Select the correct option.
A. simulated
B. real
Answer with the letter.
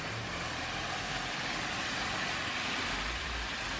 A